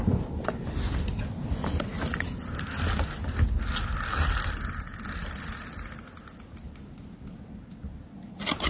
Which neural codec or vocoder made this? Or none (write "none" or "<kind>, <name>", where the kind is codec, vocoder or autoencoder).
none